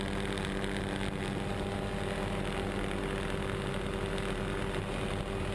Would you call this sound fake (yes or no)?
no